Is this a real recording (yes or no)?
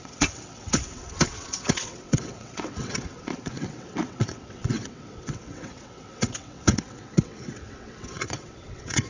no